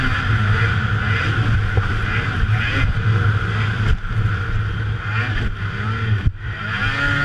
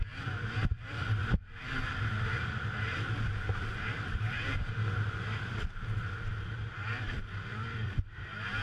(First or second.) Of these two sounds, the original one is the first